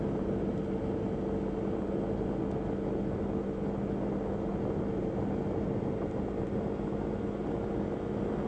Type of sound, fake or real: real